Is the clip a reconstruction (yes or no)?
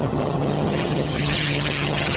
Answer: yes